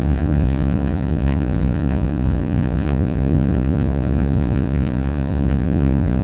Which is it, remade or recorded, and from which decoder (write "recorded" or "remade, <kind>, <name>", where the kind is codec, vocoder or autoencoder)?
remade, vocoder, Vocos